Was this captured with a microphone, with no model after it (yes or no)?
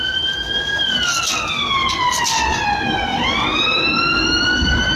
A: yes